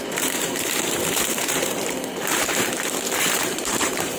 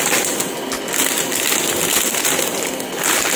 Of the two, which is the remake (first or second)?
first